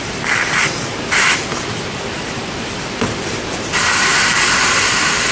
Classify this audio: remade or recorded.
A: remade